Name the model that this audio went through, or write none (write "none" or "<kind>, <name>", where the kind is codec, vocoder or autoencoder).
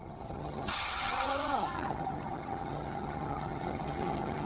vocoder, HiFi-GAN